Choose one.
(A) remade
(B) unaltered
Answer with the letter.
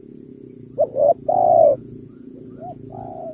A